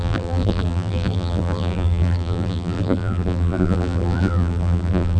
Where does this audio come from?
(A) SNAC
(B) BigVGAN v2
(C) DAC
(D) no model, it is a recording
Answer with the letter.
B